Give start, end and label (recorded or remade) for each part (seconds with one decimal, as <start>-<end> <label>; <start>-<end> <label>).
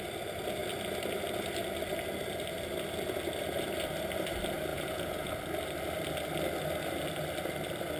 0.0-4.7 recorded; 4.7-5.3 remade; 5.3-8.0 recorded